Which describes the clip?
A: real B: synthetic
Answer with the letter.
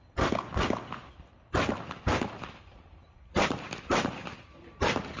A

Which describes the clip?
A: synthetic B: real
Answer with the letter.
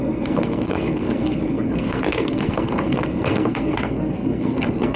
A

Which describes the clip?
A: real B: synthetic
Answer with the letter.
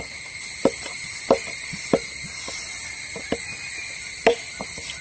A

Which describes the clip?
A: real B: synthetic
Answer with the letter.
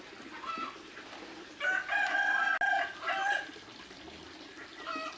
A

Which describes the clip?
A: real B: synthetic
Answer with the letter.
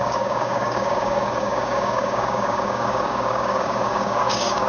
B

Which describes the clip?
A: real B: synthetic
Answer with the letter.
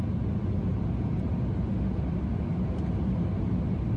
A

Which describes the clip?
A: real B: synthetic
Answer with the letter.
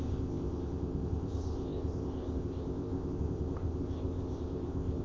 B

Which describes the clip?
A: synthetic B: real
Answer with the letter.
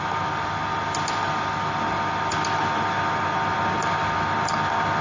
B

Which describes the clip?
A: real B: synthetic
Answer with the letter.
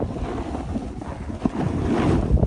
A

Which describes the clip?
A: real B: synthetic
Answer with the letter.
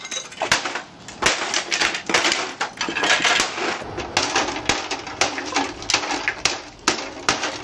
A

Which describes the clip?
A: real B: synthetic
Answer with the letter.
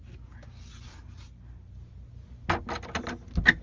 A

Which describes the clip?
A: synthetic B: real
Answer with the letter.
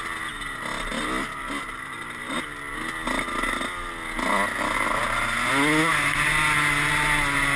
B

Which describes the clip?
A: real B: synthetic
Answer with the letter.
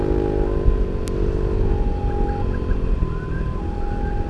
A